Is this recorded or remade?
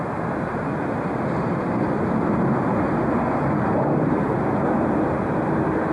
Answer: recorded